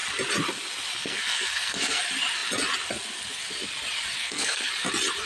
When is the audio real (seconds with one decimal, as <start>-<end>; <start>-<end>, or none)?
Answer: 0.0-1.0; 2.0-4.2; 4.7-5.3

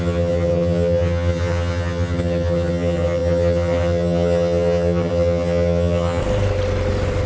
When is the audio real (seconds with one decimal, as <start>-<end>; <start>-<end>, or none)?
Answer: 6.2-7.3

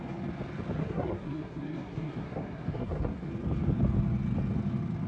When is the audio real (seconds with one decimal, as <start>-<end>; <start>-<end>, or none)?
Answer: 0.0-0.8; 3.3-5.1